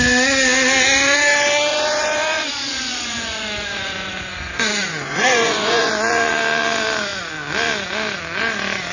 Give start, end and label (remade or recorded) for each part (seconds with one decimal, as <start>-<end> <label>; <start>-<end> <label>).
0.0-1.7 recorded; 1.7-5.9 remade; 5.9-8.9 recorded